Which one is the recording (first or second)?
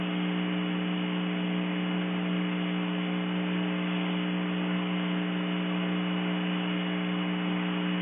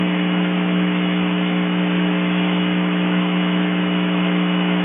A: first